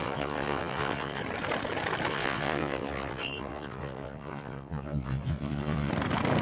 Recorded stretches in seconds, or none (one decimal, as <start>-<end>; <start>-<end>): 1.2-2.1; 5.9-6.4